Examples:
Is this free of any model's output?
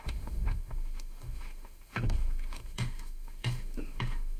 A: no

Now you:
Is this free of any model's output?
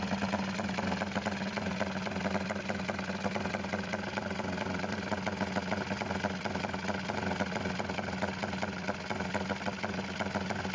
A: yes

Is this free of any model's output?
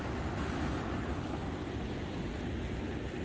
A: yes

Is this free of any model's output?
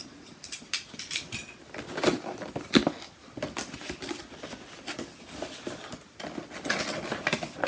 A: yes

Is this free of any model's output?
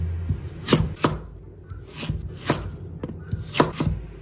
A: yes